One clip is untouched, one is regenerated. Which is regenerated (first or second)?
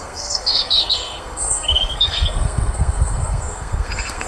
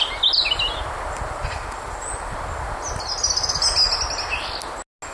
first